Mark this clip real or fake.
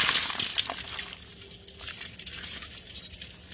real